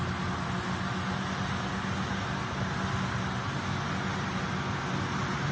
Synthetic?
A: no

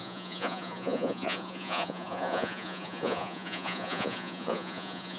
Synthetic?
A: yes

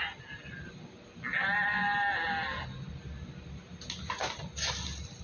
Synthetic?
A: no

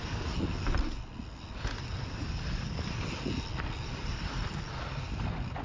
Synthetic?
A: no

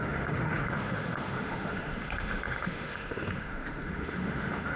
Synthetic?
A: yes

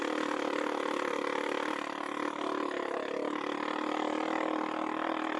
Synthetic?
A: no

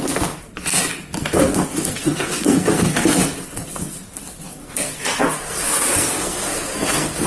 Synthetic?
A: yes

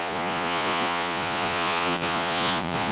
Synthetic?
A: yes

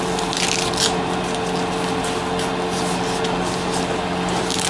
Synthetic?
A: no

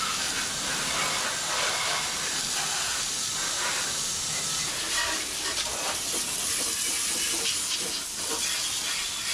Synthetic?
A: no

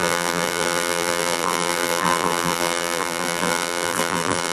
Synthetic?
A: yes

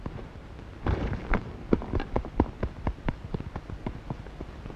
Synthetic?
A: no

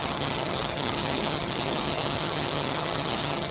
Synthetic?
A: yes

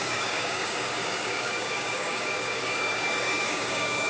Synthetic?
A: yes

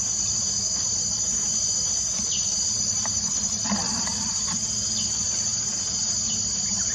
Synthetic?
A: no